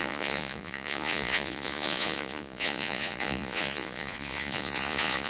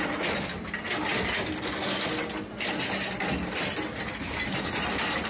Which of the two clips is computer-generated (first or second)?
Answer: first